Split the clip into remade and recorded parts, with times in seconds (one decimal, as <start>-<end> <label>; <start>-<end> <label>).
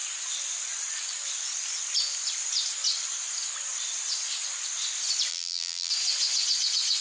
0.0-5.3 recorded; 5.3-5.9 remade; 5.9-7.0 recorded